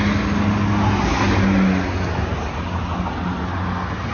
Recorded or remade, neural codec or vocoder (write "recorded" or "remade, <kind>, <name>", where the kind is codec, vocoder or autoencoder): recorded